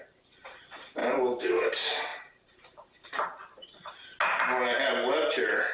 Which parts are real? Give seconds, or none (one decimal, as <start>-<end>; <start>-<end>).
0.0-1.0; 1.7-5.7